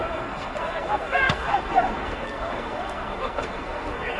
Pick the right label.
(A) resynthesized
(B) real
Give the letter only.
A